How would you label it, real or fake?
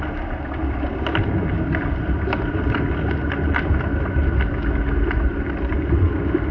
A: real